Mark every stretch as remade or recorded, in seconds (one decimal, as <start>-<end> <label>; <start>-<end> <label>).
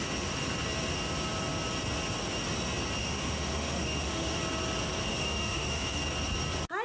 0.0-3.0 recorded; 3.0-4.4 remade; 4.4-5.1 recorded; 5.1-6.0 remade; 6.0-6.8 recorded